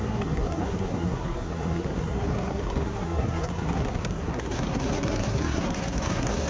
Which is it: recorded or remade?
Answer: remade